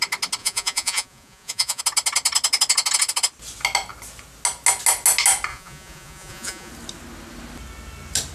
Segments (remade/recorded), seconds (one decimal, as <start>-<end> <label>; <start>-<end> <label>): 0.0-0.4 recorded; 0.4-1.8 remade; 1.8-5.5 recorded; 5.5-6.7 remade; 6.7-8.3 recorded